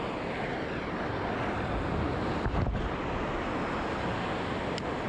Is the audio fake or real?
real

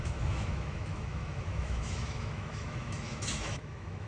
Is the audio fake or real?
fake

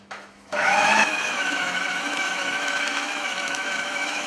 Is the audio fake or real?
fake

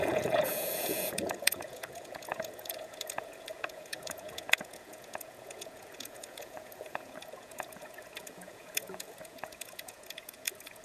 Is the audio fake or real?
fake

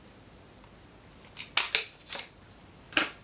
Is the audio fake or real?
real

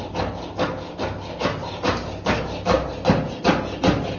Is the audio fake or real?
real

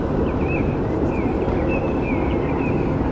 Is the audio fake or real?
fake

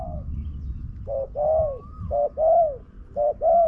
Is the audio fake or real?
real